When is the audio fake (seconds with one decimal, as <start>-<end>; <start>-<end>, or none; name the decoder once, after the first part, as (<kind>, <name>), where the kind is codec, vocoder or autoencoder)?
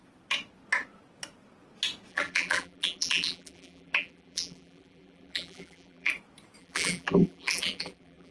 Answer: 2.1-6.1 (vocoder, BigVGAN v2); 6.6-8.3